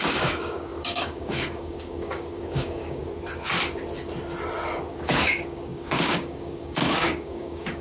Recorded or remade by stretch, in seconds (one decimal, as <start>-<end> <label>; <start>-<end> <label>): 0.0-3.0 remade; 3.0-4.9 recorded; 4.9-7.8 remade